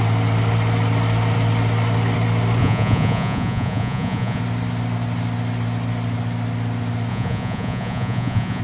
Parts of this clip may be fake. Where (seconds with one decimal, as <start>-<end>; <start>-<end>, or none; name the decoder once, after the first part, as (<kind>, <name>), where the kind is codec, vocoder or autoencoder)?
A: 2.6-4.4 (vocoder, Vocos); 7.1-8.6